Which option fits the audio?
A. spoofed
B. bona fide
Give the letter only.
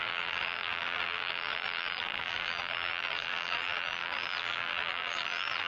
A